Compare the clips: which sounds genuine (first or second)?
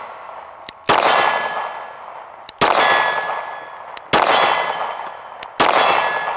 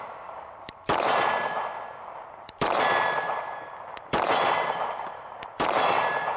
first